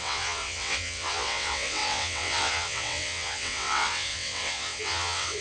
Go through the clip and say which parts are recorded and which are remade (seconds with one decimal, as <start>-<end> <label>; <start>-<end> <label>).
0.0-5.4 remade